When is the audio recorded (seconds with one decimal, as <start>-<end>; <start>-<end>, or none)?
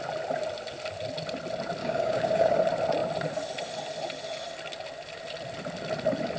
0.0-1.8; 2.6-6.4